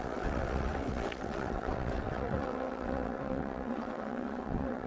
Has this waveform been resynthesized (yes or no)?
yes